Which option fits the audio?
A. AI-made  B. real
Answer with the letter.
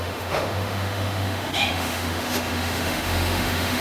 A